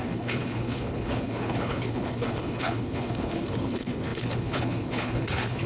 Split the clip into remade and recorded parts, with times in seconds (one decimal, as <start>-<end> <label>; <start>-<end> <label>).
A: 0.0-5.7 remade